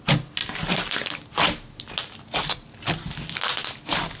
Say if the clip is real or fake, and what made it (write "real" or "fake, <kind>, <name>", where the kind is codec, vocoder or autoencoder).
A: real